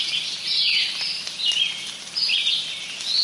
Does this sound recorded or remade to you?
recorded